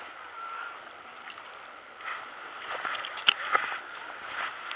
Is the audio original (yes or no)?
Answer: yes